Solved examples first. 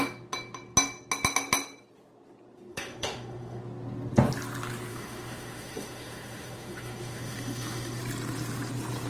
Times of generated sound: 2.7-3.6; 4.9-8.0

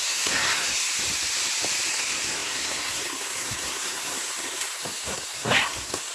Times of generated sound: 0.0-0.9; 1.9-6.1

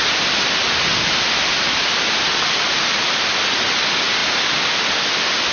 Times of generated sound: none

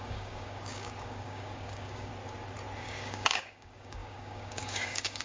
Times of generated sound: 0.0-2.1; 2.8-5.2

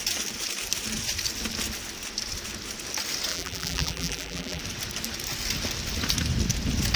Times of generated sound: 3.3-4.6

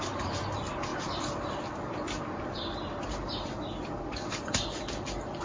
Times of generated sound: none

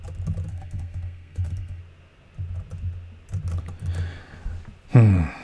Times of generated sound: 0.5-1.8